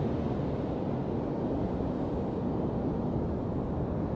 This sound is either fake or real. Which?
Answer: real